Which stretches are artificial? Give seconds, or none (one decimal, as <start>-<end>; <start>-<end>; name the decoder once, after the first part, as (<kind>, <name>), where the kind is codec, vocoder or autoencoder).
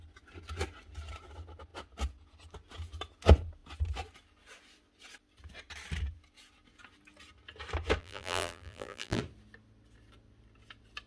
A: 8.0-9.2 (vocoder, BigVGAN v2)